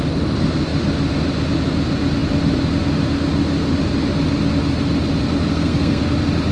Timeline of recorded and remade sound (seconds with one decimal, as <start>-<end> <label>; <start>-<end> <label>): 0.0-5.5 recorded; 5.5-6.0 remade; 6.0-6.5 recorded